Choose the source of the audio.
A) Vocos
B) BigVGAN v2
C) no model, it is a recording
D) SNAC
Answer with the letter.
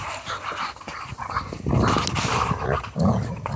C